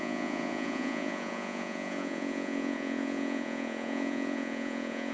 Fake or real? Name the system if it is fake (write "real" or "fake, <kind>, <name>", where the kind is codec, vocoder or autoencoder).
fake, vocoder, Vocos